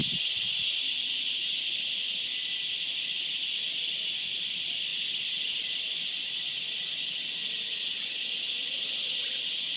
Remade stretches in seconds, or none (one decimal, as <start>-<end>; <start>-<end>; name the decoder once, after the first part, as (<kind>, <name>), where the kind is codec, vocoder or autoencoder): none

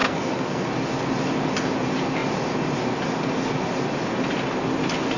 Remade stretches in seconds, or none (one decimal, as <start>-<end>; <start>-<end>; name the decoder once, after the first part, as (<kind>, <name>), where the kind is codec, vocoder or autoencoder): 0.0-0.7 (codec, SNAC)

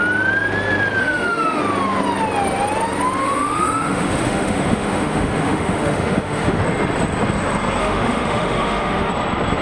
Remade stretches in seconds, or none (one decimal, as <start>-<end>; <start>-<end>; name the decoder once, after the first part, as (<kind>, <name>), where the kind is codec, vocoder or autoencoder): 1.0-1.6 (autoencoder, DAC-VAE); 3.2-6.6; 7.8-9.1

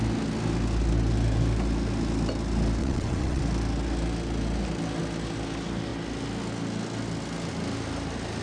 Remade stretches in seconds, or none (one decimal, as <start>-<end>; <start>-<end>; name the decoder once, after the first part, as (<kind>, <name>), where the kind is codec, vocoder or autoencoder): 2.8-3.4 (vocoder, WaveNeXt)

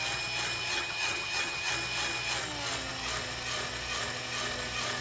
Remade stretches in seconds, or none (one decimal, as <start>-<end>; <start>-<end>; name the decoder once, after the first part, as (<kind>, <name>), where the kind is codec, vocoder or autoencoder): 0.7-1.7 (vocoder, HiFi-GAN)

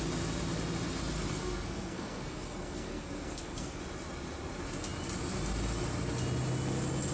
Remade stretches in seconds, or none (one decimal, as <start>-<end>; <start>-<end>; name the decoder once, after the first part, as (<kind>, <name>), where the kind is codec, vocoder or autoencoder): 1.3-3.8 (codec, SNAC)